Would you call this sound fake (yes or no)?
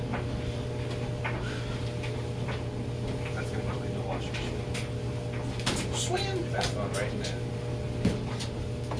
no